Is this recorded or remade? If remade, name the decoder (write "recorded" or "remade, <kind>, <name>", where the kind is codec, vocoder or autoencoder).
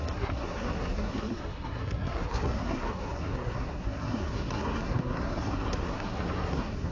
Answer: remade, codec, SNAC